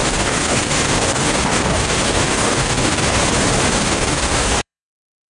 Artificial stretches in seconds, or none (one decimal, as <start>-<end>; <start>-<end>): 0.0-3.2; 3.7-5.3